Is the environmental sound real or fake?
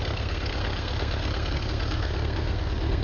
fake